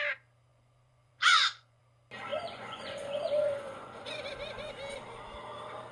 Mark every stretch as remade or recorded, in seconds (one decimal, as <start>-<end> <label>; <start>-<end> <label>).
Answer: 0.0-0.5 recorded; 0.5-1.8 remade; 1.8-2.3 recorded; 2.3-4.7 remade; 4.7-5.9 recorded